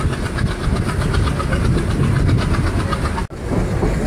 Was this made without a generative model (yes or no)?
yes